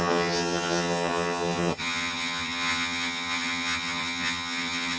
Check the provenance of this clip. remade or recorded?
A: remade